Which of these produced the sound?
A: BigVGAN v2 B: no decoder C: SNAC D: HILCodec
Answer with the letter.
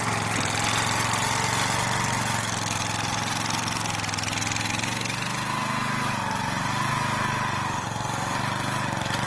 B